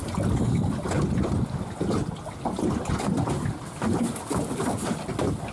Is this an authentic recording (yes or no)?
yes